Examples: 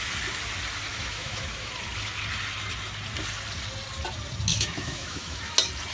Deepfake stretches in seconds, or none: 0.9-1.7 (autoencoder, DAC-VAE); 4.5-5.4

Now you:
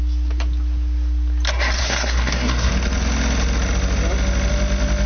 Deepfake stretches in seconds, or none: 1.8-2.7 (codec, SNAC)